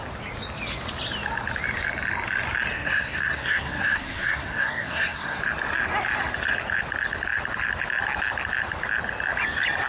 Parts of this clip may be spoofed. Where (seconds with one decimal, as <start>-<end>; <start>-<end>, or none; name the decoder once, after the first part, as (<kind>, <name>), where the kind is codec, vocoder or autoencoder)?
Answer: 2.7-5.4 (codec, SNAC)